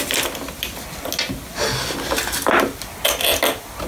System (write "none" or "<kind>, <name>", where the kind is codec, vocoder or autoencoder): none